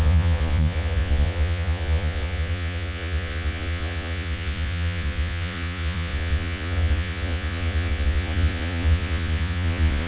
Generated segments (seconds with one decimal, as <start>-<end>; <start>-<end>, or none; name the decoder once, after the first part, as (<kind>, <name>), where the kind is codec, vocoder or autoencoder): 0.0-10.1 (vocoder, Vocos)